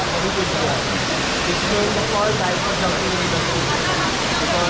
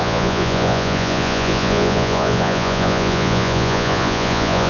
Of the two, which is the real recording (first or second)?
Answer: first